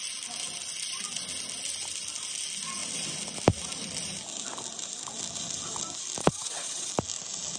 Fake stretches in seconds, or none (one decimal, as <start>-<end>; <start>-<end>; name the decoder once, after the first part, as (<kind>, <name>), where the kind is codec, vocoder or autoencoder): 6.2-6.9 (vocoder, WaveNeXt)